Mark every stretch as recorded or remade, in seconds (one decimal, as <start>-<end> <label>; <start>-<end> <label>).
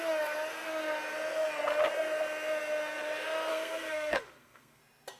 0.0-3.5 recorded; 3.5-4.8 remade; 4.8-5.2 recorded